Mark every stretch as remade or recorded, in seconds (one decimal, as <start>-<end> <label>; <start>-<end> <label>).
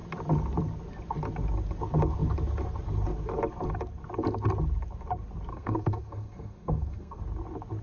0.0-5.5 recorded; 5.5-7.2 remade; 7.2-7.8 recorded